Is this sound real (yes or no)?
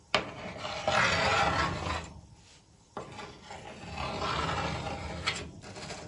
yes